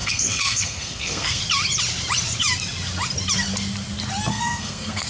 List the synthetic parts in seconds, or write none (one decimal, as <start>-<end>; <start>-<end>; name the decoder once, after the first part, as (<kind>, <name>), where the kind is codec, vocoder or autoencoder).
0.0-1.4 (codec, SNAC); 4.3-5.1